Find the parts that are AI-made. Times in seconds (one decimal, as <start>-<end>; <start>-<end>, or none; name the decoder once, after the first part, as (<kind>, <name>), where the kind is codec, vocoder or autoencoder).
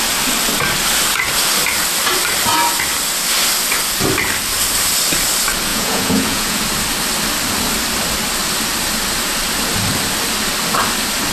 5.7-6.6 (vocoder, Vocos)